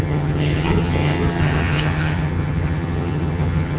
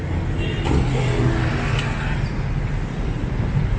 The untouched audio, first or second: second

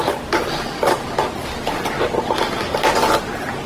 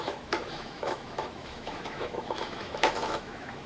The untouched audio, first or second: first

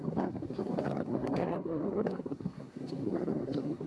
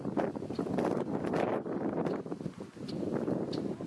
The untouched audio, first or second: second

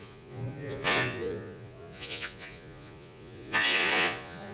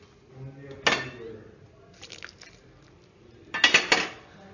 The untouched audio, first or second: second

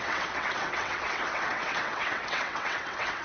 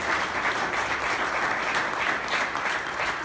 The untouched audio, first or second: second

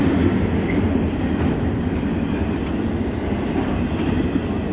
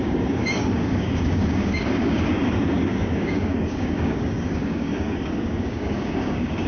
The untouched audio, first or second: first